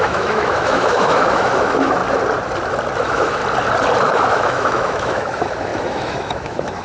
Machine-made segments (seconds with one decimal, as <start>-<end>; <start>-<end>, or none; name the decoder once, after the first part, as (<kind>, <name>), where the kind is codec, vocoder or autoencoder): 0.0-2.0 (autoencoder, DAC-VAE); 3.0-3.4; 4.0-6.8